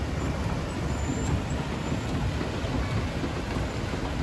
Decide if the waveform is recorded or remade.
recorded